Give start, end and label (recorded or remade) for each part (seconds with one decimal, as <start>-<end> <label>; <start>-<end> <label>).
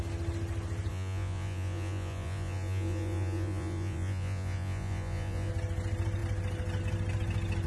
0.0-0.9 recorded; 0.9-5.5 remade; 5.5-7.7 recorded